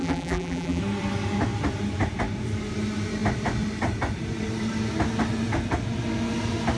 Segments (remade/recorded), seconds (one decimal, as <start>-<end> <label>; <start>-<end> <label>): 0.0-0.8 remade; 0.8-6.8 recorded